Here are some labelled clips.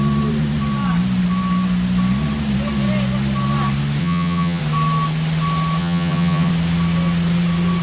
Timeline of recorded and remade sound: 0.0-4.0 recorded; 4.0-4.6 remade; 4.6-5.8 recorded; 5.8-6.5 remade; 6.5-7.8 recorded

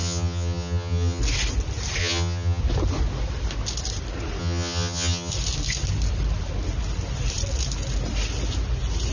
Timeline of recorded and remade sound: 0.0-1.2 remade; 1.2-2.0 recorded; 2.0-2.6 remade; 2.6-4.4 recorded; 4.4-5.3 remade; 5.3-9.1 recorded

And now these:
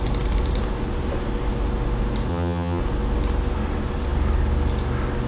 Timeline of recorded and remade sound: 0.0-2.3 recorded; 2.3-2.8 remade; 2.8-5.3 recorded

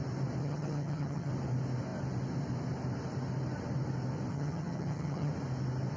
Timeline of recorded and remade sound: 0.0-0.4 recorded; 0.4-1.3 remade; 1.3-4.3 recorded; 4.3-5.3 remade; 5.3-6.0 recorded